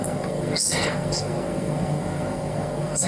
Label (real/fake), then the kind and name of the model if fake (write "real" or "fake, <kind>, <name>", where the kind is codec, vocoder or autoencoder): fake, codec, SNAC